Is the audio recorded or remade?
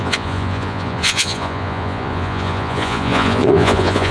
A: remade